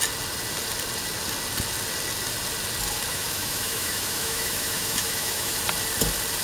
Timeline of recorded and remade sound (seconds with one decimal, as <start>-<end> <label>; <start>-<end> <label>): 0.0-3.1 recorded; 3.1-5.6 remade; 5.6-6.4 recorded